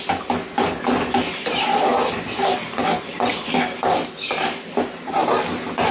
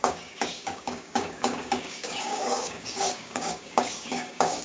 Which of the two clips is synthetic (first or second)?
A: second